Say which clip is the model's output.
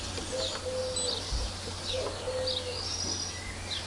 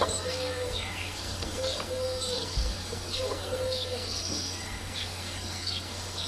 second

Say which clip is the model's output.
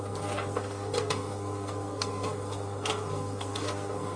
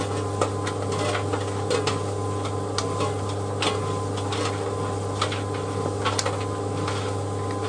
first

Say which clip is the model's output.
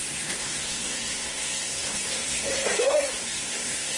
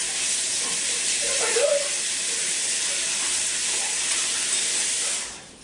first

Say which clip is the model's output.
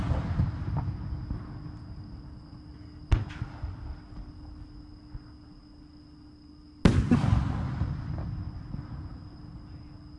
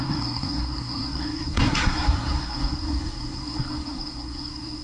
second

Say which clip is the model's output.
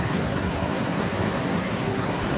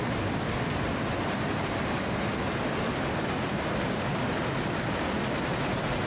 first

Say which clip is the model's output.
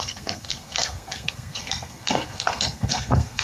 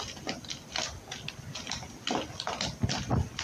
first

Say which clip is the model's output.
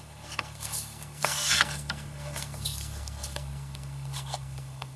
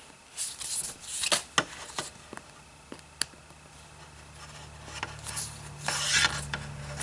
first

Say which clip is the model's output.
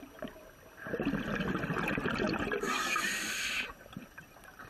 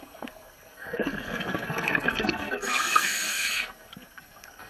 second